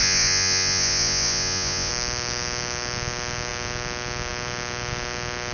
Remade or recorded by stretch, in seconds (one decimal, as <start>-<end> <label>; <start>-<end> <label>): 0.0-1.9 remade; 1.9-5.5 recorded